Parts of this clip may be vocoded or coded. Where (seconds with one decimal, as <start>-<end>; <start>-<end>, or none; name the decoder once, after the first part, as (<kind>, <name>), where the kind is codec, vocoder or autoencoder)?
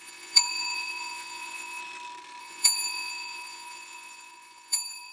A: 0.0-1.8 (vocoder, Vocos); 2.4-5.1